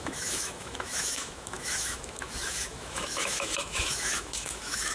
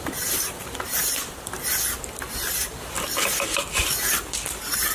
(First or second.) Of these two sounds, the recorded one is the second